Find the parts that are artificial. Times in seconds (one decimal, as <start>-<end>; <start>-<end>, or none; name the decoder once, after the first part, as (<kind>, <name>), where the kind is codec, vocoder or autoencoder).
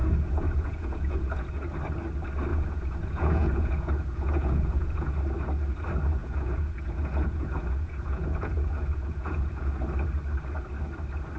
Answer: 0.0-1.5 (vocoder, Vocos); 2.5-5.2; 6.2-9.7